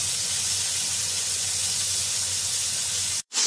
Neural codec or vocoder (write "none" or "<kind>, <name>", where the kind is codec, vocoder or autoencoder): vocoder, Vocos